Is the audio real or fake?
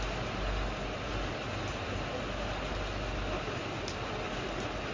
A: real